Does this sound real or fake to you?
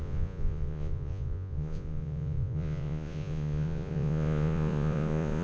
fake